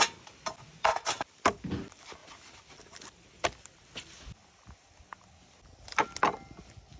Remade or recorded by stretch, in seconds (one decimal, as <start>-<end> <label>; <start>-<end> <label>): 0.0-7.0 recorded